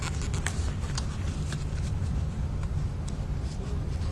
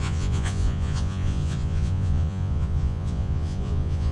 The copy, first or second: second